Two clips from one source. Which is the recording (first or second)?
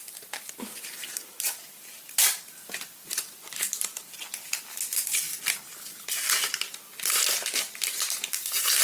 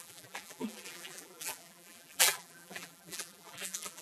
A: first